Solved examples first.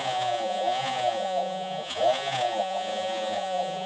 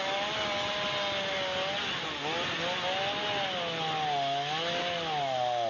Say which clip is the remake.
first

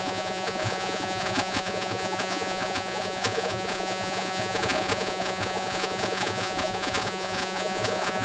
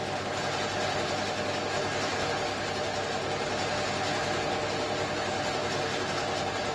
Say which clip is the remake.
first